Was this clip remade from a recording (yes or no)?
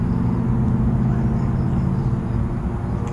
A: no